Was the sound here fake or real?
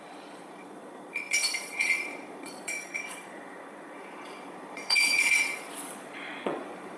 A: fake